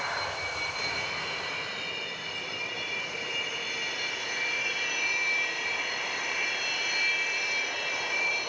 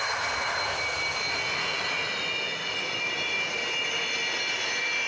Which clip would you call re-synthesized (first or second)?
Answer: first